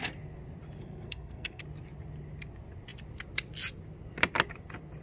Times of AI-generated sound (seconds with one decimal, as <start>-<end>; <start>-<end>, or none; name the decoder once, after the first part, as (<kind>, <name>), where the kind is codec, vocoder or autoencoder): 0.8-1.6 (codec, SNAC)